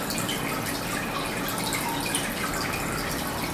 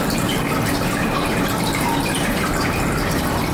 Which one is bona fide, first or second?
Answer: first